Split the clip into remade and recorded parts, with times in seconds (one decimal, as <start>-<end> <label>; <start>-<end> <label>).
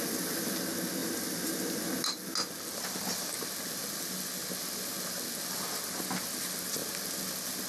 0.0-7.7 recorded